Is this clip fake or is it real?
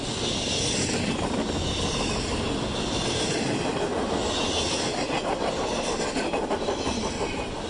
real